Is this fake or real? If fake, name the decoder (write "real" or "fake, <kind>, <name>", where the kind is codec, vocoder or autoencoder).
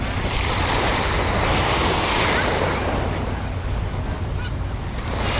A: fake, vocoder, BigVGAN v2